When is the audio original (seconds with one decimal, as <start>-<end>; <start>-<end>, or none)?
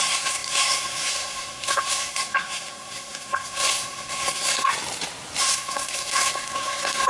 4.7-5.4